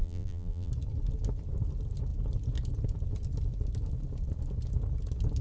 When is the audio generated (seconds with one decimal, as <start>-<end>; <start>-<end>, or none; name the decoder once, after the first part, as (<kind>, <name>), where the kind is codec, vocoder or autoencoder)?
0.0-0.7 (vocoder, BigVGAN v2)